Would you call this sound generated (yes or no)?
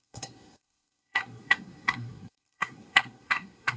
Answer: yes